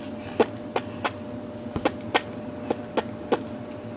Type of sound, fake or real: real